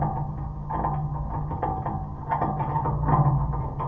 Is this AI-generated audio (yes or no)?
no